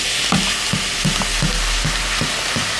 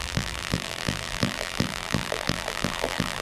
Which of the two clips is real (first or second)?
first